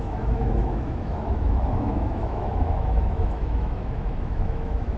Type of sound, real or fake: fake